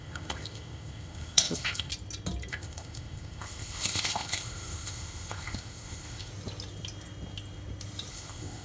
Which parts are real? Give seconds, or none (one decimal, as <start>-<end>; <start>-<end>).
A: 1.9-2.5; 6.3-8.1

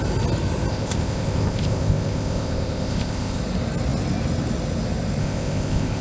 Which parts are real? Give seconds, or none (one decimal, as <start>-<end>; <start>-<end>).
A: 0.0-0.7; 3.4-5.2

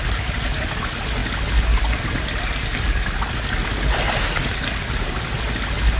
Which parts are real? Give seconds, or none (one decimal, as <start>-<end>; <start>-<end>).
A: 0.0-6.0

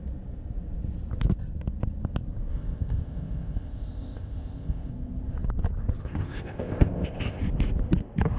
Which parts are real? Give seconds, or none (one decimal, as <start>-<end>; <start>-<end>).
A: 0.0-2.5; 4.9-6.0; 7.4-8.4

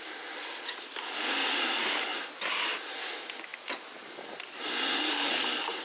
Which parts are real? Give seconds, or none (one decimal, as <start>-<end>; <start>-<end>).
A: 0.0-5.8